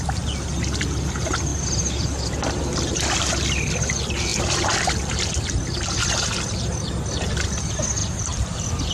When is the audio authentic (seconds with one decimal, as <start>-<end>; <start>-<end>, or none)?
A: 0.0-4.3; 5.3-8.0